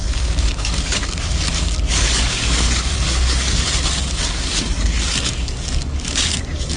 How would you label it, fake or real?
fake